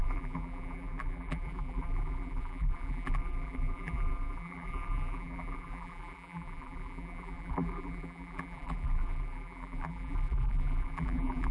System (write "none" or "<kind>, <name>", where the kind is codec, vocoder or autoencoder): vocoder, BigVGAN v2